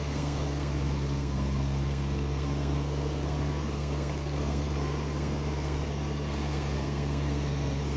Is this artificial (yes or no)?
yes